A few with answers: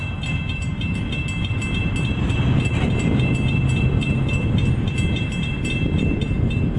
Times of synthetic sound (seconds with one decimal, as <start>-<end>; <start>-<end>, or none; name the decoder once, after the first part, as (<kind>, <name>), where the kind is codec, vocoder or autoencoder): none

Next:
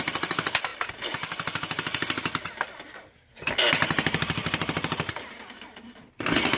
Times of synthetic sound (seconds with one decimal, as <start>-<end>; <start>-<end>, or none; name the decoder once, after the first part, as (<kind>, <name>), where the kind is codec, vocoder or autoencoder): none

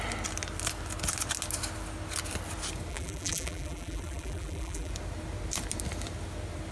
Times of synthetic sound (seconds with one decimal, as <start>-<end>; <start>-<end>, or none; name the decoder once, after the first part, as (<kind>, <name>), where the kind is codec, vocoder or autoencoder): 2.9-4.9 (vocoder, BigVGAN v2)

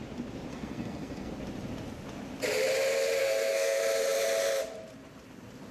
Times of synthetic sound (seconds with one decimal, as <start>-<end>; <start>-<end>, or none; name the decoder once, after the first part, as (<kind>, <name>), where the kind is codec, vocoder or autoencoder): 0.5-1.3 (codec, SNAC); 3.2-3.8